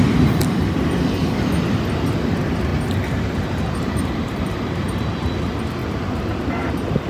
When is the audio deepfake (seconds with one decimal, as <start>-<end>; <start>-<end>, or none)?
2.7-5.3; 5.8-6.4